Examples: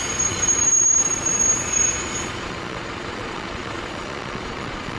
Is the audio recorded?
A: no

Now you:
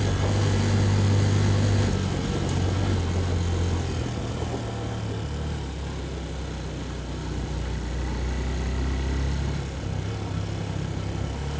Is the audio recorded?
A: yes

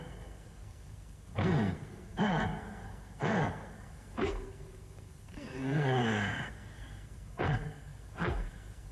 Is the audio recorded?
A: no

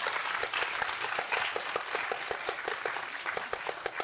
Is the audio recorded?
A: yes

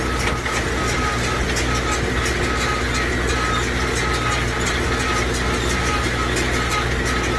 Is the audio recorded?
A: yes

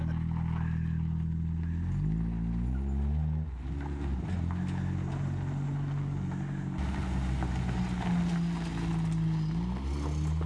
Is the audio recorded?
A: yes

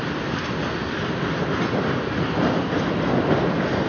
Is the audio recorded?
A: yes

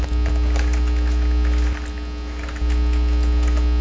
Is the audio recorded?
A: yes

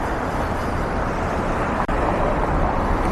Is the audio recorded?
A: no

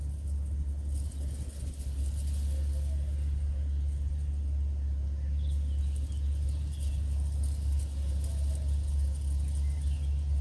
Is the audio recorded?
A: yes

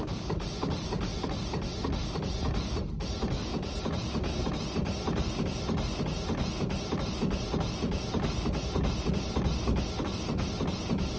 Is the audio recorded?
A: yes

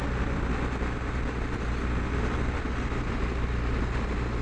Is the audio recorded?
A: yes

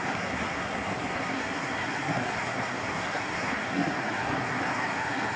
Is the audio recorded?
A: no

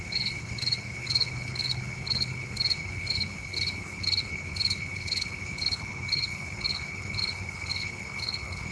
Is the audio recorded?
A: no